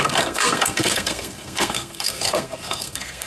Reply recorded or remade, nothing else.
remade